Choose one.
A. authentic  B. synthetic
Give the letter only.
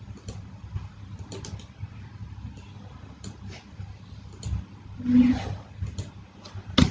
A